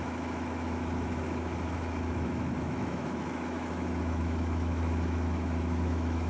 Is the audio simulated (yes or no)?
yes